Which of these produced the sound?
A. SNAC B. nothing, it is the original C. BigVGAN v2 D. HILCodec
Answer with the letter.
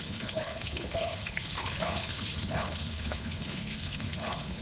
D